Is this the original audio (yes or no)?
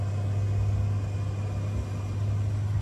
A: yes